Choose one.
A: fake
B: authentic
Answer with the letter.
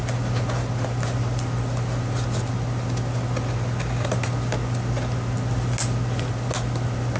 B